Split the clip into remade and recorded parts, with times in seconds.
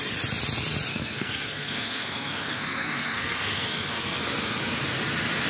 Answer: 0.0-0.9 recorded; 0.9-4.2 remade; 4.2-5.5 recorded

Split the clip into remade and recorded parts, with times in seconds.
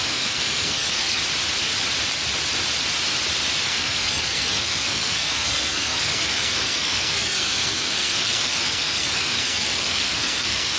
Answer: 0.0-1.2 remade; 1.2-3.6 recorded; 3.6-10.8 remade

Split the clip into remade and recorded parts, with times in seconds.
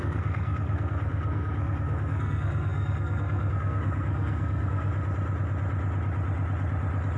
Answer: 0.0-4.9 remade; 4.9-7.2 recorded